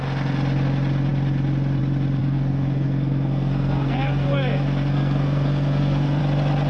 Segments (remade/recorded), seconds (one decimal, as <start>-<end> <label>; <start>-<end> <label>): 0.0-2.2 recorded; 2.2-6.2 remade; 6.2-6.7 recorded